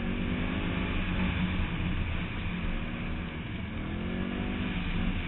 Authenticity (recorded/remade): recorded